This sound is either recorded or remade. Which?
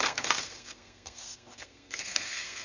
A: remade